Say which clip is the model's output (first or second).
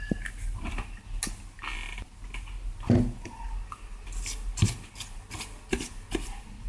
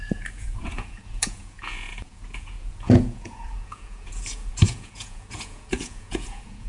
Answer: second